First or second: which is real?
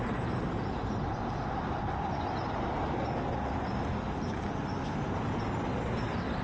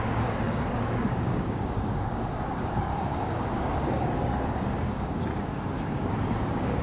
first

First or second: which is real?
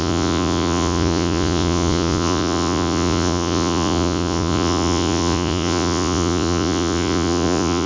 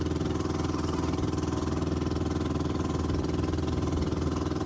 second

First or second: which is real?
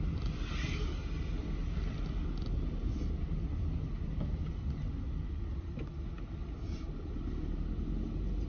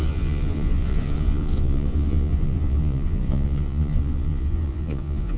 first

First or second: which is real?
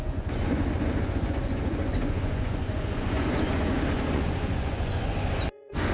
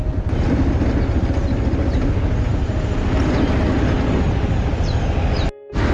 second